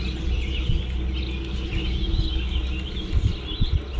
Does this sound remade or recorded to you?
recorded